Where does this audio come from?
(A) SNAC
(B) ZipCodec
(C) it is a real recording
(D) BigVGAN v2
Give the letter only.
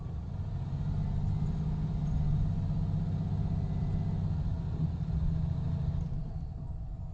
C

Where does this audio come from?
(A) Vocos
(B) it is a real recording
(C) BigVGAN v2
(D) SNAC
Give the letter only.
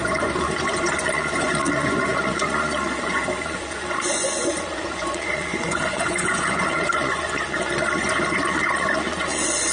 A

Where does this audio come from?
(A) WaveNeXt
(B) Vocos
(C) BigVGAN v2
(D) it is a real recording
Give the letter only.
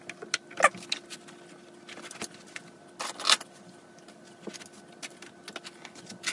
D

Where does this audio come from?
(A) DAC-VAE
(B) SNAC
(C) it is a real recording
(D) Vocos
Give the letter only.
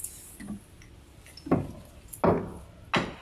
C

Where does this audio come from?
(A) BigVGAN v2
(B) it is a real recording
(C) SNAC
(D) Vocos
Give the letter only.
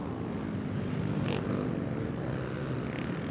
B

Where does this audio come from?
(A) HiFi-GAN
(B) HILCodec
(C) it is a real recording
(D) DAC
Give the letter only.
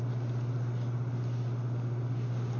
C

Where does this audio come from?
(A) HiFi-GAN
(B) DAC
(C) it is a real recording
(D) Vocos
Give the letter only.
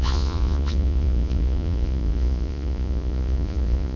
D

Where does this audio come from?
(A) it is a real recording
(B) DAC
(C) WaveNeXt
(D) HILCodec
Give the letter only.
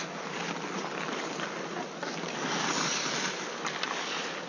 A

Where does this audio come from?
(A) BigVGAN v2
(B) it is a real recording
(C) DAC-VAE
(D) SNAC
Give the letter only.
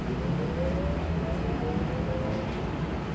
B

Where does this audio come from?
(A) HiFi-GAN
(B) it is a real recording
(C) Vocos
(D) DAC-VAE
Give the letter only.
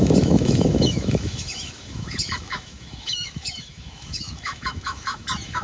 D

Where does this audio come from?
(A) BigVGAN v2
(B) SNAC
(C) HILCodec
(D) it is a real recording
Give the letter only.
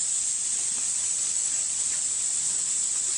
D